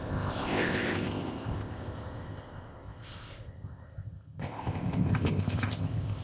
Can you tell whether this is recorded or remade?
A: remade